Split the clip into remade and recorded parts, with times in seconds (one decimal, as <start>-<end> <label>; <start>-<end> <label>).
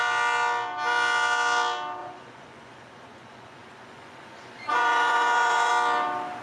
0.0-2.0 recorded; 2.0-5.7 remade; 5.7-6.4 recorded